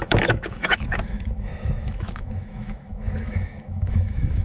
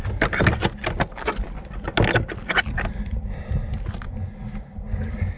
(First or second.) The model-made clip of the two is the first